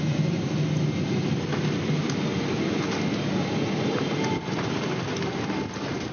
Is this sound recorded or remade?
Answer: recorded